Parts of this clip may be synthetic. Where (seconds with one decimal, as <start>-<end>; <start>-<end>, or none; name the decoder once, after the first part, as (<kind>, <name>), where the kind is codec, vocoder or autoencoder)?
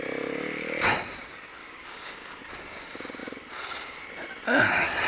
1.6-2.4 (codec, DAC)